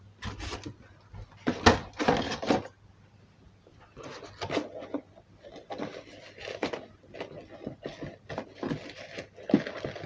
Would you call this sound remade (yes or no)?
no